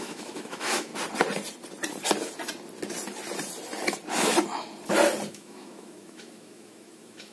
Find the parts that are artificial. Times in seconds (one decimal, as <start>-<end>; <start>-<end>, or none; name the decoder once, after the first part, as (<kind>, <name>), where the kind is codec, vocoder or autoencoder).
0.0-0.9 (autoencoder, DAC-VAE); 5.3-7.3